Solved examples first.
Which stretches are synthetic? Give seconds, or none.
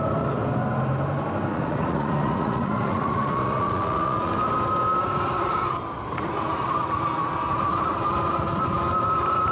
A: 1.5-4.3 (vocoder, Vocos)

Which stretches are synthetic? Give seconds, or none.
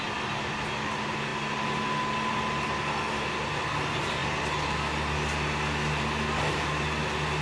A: none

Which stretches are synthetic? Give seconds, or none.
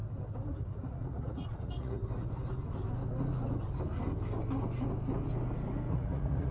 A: 0.5-2.0 (vocoder, Vocos); 5.9-6.5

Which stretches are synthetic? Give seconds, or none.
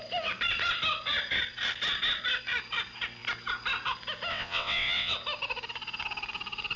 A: 4.3-5.1 (vocoder, WaveNeXt)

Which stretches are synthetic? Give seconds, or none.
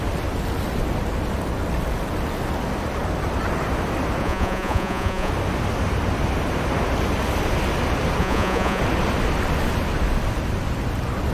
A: 4.2-5.3 (vocoder, Vocos); 8.2-8.8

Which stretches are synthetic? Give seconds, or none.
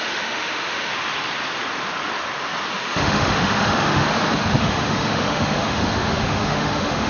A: 0.0-0.9 (autoencoder, DAC-VAE); 2.7-4.0; 4.6-7.1